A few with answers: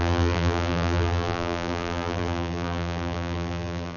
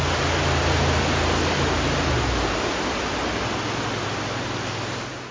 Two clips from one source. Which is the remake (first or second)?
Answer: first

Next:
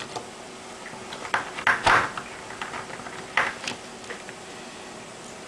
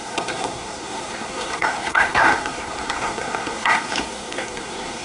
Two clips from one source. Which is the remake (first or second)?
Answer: second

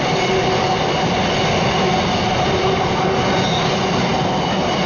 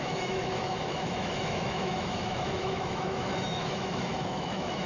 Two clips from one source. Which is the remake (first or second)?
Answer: second